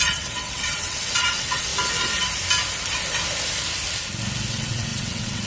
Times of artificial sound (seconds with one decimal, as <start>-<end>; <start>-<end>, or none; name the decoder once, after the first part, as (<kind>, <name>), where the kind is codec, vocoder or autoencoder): 0.0-1.7 (vocoder, WaveNeXt); 4.5-5.5